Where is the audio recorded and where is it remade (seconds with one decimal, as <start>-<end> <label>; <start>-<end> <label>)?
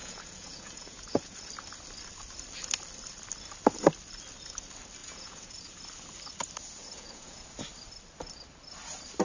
0.0-1.5 remade; 1.5-5.0 recorded; 5.0-5.8 remade; 5.8-6.8 recorded; 6.8-7.4 remade; 7.4-9.2 recorded